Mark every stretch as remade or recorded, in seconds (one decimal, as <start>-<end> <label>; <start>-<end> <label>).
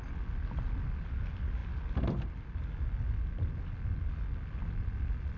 0.0-5.4 recorded